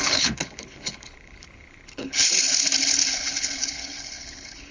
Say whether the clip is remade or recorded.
remade